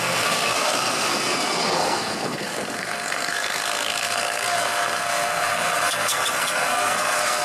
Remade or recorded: remade